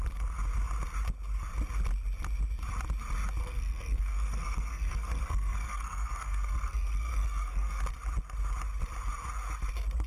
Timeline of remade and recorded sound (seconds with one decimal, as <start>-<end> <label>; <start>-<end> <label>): 0.0-3.4 recorded; 3.4-7.8 remade; 7.8-10.1 recorded